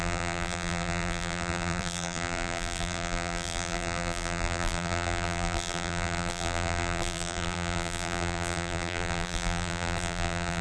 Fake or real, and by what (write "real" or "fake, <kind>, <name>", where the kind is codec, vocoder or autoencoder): fake, vocoder, BigVGAN v2